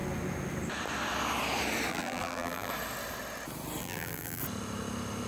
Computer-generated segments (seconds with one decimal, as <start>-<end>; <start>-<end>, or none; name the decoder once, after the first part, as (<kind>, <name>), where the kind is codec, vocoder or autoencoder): 1.9-2.7 (vocoder, BigVGAN v2); 3.8-4.4